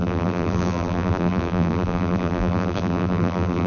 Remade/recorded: remade